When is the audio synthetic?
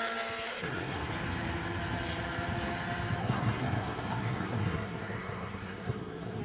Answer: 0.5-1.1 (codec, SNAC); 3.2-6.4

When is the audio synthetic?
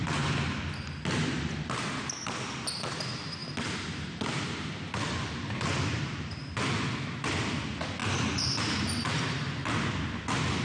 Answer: none